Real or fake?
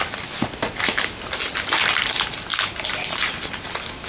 real